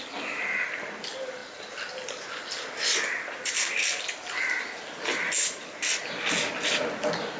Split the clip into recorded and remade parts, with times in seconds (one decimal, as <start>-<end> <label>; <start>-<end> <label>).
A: 0.0-7.4 recorded